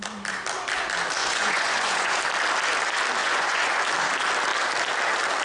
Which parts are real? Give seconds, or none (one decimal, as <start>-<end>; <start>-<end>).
0.0-1.2; 2.2-3.2; 3.8-5.4